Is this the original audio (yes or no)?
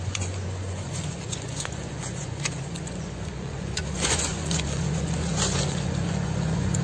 no